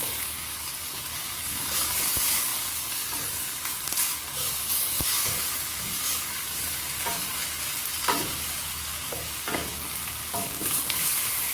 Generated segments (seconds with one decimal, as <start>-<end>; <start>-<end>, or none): 0.0-11.5